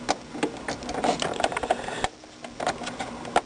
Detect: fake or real real